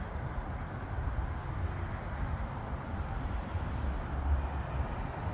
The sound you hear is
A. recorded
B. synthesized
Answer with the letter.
A